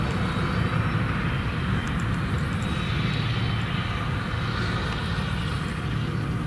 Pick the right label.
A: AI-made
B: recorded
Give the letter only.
B